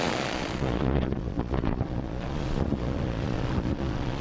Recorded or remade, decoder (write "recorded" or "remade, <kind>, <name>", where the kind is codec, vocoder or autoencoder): remade, vocoder, Vocos